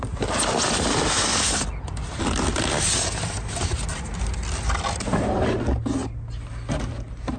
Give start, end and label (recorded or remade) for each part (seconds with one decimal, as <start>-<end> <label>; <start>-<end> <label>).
0.0-7.4 recorded